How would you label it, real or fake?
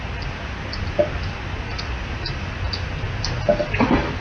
real